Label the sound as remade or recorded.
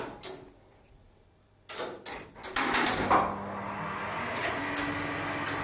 recorded